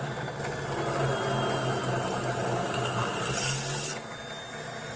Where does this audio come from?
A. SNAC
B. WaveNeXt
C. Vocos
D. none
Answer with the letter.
D